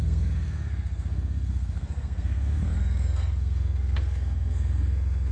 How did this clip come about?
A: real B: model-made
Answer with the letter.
B